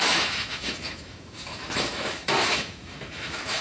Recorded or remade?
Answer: remade